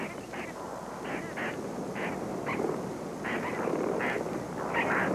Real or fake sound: real